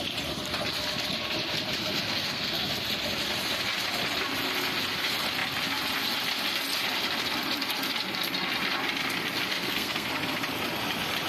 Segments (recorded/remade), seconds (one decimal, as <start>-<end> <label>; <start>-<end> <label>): 0.0-1.8 recorded; 1.8-2.7 remade; 2.7-9.5 recorded; 9.5-10.1 remade; 10.1-11.3 recorded